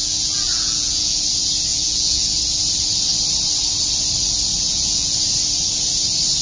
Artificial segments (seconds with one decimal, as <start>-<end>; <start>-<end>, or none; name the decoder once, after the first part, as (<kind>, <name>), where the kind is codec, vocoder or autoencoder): 0.0-1.2 (vocoder, Vocos); 1.7-2.4; 4.7-5.2

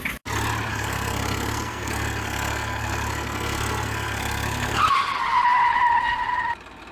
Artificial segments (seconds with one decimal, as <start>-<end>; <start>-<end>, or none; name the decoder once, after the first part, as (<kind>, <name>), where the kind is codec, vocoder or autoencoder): 0.7-4.8 (codec, SNAC)